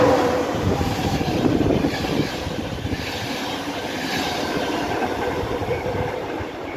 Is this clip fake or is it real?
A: fake